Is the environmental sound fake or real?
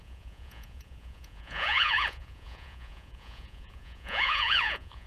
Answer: fake